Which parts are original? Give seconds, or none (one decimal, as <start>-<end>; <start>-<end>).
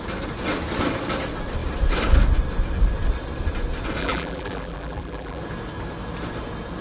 0.0-4.0; 5.4-6.8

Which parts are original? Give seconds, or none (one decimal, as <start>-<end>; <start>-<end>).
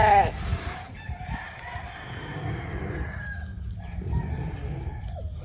0.0-0.5; 1.8-3.5; 4.2-5.4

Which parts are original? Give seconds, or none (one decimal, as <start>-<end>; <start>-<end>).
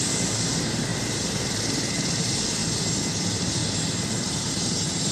2.6-3.1; 3.6-4.1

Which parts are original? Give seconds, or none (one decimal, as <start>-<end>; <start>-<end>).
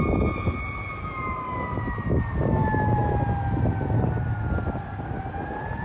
0.0-5.8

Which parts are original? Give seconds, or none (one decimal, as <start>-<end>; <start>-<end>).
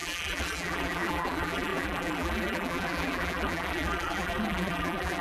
none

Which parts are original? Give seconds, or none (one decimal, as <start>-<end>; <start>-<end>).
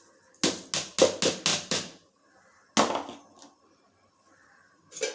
0.0-1.5; 2.2-5.1